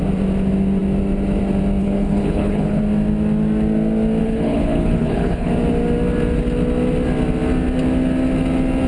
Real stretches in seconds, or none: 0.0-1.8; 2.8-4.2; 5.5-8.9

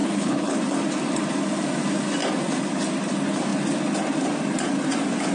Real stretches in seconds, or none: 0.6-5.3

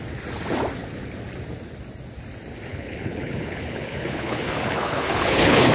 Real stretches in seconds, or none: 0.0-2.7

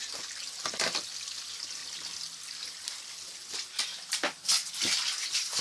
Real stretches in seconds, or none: 0.0-5.6